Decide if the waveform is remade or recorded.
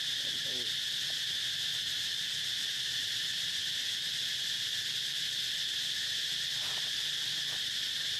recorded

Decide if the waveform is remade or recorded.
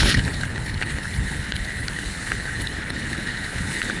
remade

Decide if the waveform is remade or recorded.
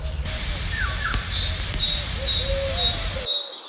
recorded